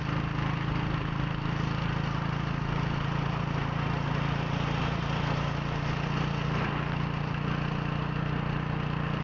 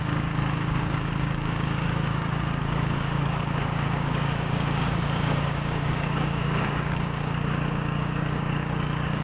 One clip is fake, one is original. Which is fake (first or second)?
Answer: second